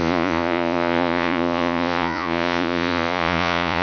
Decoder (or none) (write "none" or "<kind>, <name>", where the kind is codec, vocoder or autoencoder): vocoder, Vocos